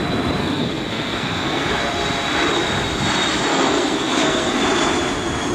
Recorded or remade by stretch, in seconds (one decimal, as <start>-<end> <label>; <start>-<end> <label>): 0.0-0.4 recorded; 0.4-1.7 remade; 1.7-3.5 recorded; 3.5-4.6 remade; 4.6-5.5 recorded